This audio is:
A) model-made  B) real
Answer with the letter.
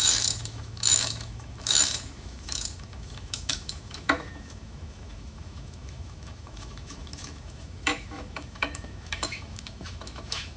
A